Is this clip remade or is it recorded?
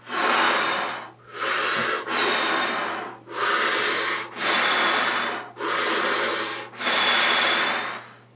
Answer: recorded